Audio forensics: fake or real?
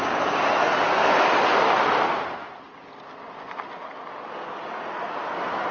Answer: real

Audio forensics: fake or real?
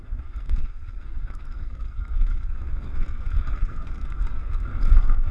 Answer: fake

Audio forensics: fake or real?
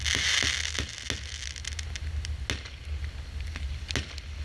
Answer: real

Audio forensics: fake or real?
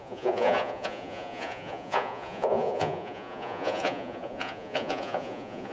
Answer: fake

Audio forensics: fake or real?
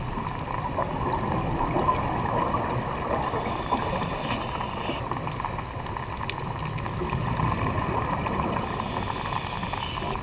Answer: real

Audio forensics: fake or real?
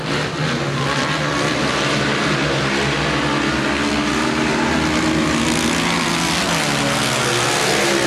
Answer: real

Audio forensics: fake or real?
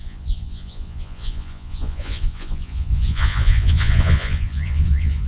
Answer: fake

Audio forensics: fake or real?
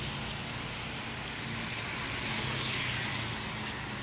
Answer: real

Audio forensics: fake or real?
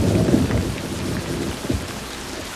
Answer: real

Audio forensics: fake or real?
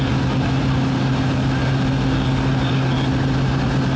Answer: real